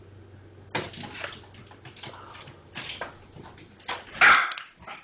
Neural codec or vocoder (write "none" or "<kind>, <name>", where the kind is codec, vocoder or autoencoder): none